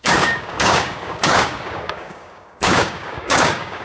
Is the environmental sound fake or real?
fake